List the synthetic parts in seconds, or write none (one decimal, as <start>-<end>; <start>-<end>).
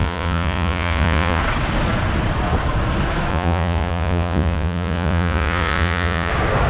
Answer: 0.0-1.4; 3.3-6.3